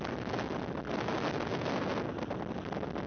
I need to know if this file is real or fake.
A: real